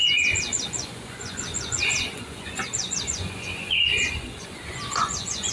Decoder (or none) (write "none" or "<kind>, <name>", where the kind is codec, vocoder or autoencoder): vocoder, Vocos